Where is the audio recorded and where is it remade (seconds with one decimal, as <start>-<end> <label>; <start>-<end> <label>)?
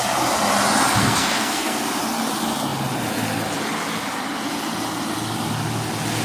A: 0.0-1.0 recorded; 1.0-1.8 remade; 1.8-6.2 recorded